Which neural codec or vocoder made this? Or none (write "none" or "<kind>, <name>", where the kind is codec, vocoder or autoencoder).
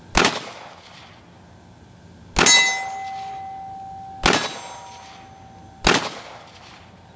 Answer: none